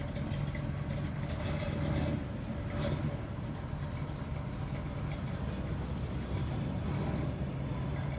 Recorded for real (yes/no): yes